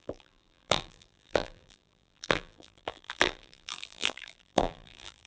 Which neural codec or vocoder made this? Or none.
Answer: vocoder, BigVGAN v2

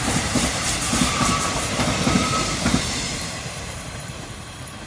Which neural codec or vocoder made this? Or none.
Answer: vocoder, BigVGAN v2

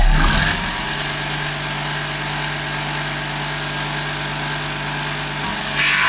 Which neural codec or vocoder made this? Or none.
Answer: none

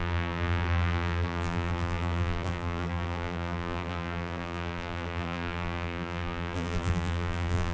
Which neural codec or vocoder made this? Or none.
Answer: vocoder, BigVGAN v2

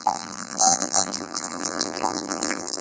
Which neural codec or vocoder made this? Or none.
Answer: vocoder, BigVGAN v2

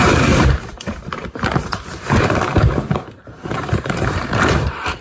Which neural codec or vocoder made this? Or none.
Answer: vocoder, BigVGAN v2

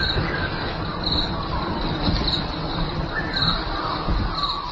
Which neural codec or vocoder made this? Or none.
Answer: none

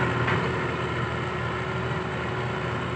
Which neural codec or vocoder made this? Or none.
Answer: none